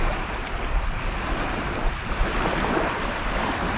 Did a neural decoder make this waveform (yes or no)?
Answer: no